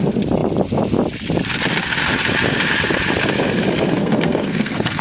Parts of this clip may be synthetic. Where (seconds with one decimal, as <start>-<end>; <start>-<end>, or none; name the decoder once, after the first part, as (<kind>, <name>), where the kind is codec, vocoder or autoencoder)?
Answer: 4.0-5.0 (codec, SNAC)